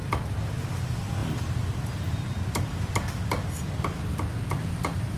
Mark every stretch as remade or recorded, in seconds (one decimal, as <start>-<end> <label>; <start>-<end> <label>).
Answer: 0.0-5.2 recorded